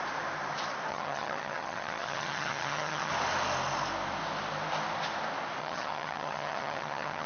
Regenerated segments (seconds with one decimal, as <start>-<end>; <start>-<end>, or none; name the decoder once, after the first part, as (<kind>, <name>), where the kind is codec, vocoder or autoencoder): 0.9-3.1 (vocoder, HiFi-GAN); 5.6-7.3